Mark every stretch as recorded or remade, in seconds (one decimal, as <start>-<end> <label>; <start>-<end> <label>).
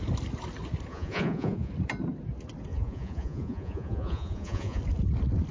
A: 0.0-0.9 recorded; 0.9-1.7 remade; 1.7-2.7 recorded; 2.7-4.8 remade; 4.8-5.5 recorded